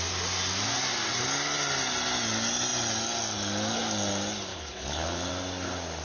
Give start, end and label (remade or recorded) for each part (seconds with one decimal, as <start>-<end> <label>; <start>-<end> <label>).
0.0-4.5 recorded; 4.5-5.3 remade; 5.3-6.0 recorded